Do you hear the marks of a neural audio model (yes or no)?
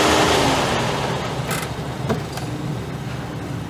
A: no